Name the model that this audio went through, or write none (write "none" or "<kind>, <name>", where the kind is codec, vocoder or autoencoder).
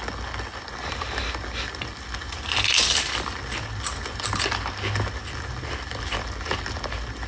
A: none